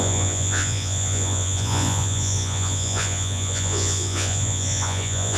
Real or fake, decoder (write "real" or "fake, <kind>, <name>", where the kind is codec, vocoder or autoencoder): fake, vocoder, Vocos